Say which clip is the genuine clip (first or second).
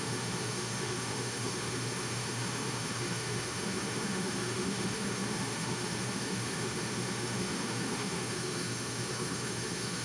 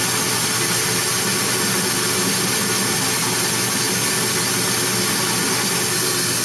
second